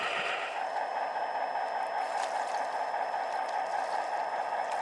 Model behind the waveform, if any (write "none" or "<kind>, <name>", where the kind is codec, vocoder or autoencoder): none